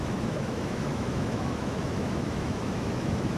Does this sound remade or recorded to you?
remade